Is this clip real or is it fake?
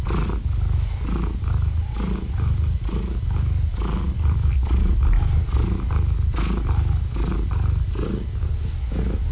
real